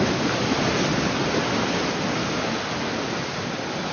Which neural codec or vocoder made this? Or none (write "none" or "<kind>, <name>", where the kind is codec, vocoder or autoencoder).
none